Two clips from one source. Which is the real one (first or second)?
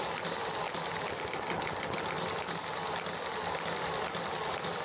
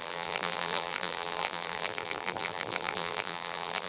first